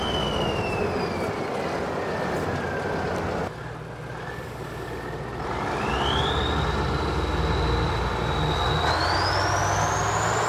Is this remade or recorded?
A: recorded